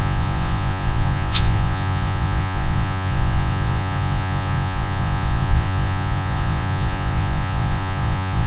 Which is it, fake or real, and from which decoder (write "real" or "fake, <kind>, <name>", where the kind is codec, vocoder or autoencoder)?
fake, vocoder, Vocos